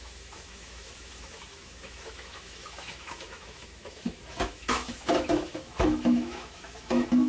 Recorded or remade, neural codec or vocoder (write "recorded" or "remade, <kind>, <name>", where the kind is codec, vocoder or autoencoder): remade, autoencoder, DAC-VAE